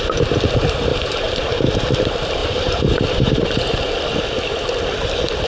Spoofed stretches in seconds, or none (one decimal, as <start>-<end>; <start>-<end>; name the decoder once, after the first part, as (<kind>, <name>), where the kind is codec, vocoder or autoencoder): 0.9-1.4 (vocoder, BigVGAN v2); 2.4-3.9